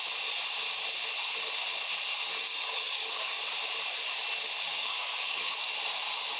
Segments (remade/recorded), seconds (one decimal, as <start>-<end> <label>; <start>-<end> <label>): 0.0-2.1 recorded; 2.1-3.4 remade; 3.4-4.7 recorded; 4.7-5.5 remade; 5.5-6.4 recorded